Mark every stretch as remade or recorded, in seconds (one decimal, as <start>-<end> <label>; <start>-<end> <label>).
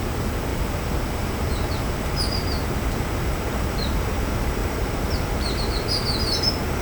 0.0-4.6 recorded; 4.6-5.4 remade; 5.4-6.8 recorded